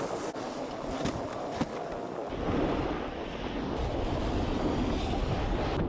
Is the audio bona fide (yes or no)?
yes